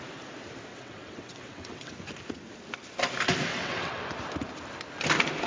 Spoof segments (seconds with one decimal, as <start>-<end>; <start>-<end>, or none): 0.7-1.9; 3.5-4.0